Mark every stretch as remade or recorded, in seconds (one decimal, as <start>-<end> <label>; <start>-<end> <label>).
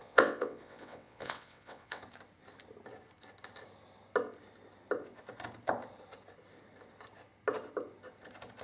0.0-2.0 remade; 2.0-8.6 recorded